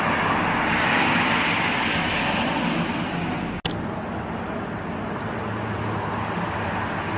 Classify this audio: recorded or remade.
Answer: recorded